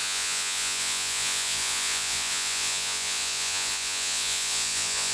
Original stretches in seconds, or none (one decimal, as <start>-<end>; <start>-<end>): none